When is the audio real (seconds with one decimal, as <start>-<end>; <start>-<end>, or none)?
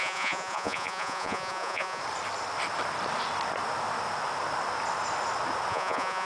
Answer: 2.0-5.7